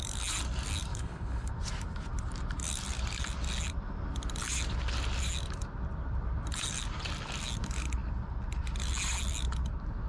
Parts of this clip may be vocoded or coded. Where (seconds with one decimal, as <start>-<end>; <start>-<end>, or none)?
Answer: 0.9-1.5

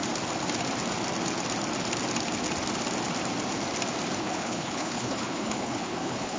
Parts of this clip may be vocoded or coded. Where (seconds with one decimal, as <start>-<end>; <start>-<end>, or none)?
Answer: 4.2-6.4

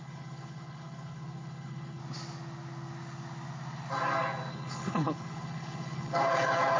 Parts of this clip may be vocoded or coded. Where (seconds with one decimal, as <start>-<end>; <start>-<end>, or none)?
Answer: 0.0-2.0; 4.5-6.8

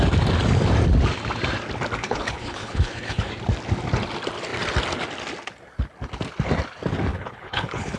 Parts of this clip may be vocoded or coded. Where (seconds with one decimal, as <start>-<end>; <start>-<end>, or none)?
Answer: 2.0-3.3; 7.1-8.0

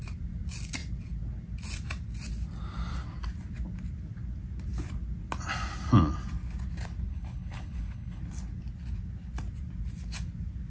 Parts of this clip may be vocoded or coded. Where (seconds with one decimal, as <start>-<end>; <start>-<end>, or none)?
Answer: 7.1-8.2

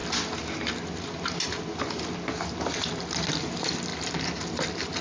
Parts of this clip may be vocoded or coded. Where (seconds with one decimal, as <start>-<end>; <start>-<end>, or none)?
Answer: none